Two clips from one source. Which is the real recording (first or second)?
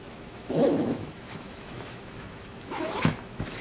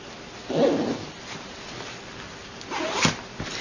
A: second